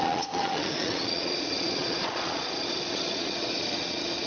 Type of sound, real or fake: fake